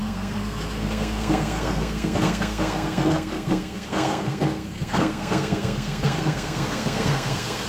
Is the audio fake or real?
fake